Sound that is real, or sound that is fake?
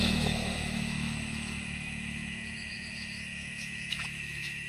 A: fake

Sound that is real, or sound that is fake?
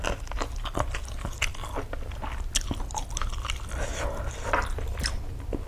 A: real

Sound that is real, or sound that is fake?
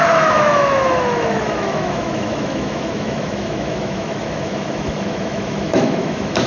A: fake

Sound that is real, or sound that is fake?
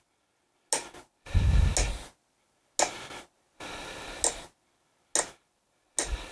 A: real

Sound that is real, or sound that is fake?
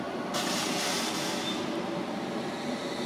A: real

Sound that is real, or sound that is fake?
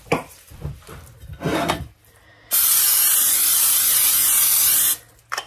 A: real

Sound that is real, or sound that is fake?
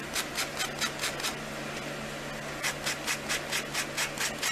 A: real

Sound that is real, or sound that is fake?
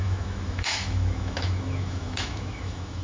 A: fake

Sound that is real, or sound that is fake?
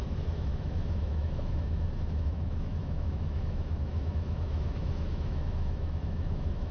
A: fake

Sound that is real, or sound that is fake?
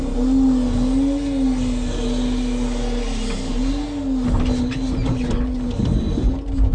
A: real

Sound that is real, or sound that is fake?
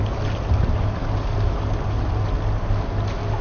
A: real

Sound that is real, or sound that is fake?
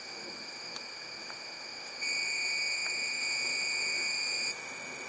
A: fake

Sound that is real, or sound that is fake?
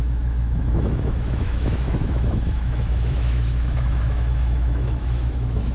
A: fake